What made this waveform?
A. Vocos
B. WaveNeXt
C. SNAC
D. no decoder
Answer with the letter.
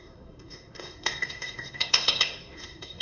C